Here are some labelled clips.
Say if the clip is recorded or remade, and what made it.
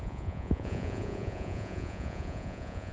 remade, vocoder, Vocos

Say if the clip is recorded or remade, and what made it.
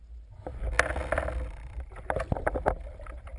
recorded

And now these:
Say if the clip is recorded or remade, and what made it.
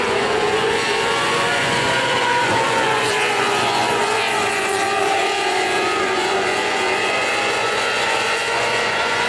remade, vocoder, Vocos